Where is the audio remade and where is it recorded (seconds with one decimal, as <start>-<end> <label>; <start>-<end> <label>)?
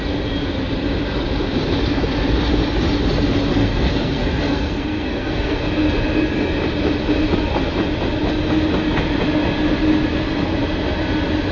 0.0-3.5 recorded; 3.5-5.7 remade; 5.7-11.5 recorded